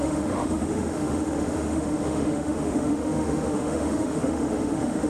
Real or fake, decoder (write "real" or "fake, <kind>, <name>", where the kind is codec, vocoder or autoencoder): fake, autoencoder, DAC-VAE